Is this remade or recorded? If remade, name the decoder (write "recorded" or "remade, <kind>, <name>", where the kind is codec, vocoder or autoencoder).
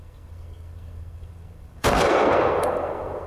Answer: remade, codec, SNAC